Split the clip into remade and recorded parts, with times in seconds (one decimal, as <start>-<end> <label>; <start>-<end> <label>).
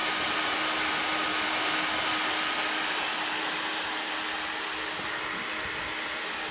0.0-6.5 recorded